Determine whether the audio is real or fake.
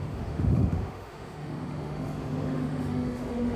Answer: fake